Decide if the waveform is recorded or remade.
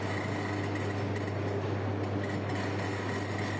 recorded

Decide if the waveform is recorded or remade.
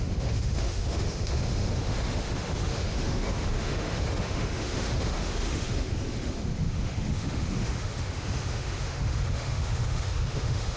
remade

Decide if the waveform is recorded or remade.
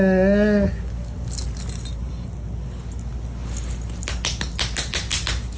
recorded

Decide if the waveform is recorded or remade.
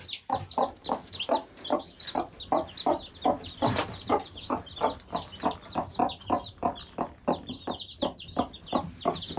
recorded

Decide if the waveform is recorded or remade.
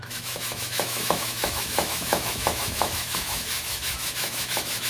remade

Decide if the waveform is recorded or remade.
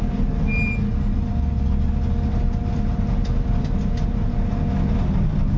recorded